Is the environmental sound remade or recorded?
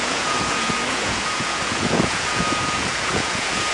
remade